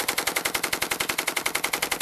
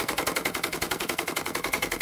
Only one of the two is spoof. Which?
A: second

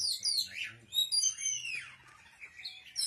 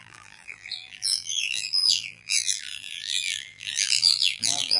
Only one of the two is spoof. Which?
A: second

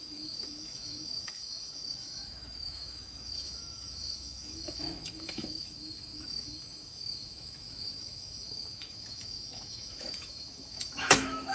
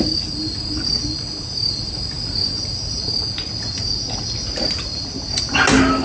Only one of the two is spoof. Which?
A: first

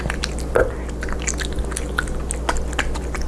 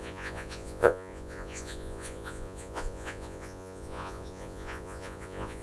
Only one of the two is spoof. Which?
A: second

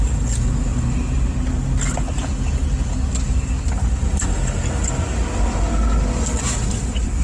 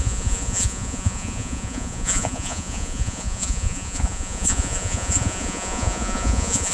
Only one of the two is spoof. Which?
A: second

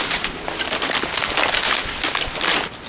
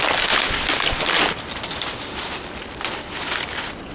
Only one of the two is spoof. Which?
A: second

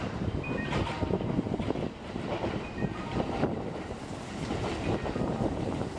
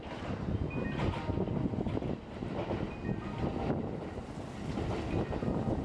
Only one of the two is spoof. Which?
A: first